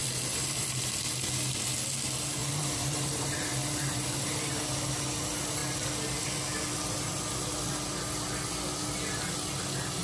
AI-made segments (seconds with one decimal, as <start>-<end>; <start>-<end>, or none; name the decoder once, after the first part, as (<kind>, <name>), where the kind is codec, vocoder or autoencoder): 0.0-1.0 (vocoder, BigVGAN v2); 2.4-4.5